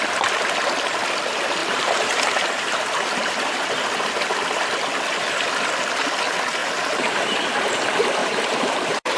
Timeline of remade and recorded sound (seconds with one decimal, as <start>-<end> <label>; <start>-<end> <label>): 0.0-1.6 recorded; 1.6-3.7 remade; 3.7-6.6 recorded; 6.6-7.7 remade; 7.7-8.2 recorded; 8.2-9.2 remade